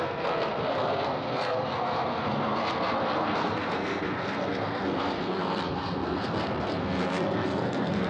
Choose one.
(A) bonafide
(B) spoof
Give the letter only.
B